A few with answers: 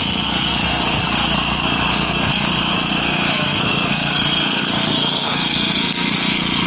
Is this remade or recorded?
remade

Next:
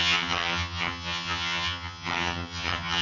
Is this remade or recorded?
remade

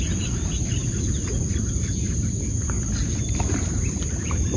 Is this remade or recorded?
recorded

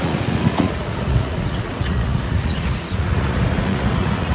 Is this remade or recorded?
remade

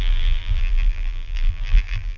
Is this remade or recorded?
remade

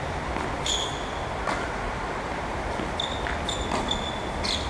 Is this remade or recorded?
recorded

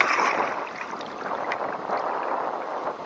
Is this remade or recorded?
recorded